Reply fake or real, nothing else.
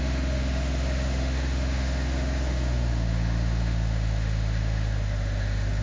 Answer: fake